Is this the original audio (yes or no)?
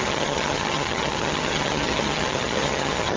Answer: no